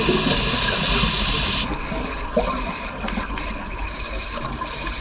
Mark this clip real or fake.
real